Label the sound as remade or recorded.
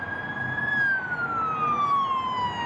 recorded